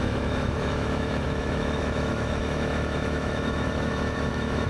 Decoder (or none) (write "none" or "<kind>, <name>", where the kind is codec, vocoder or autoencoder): autoencoder, DAC-VAE